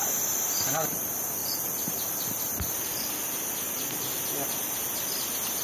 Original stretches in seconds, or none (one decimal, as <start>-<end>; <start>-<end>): 0.0-5.6